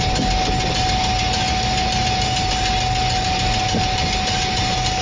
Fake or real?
real